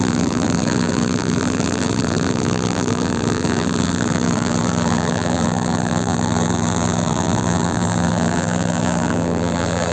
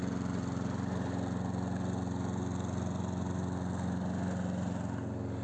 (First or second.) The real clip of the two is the second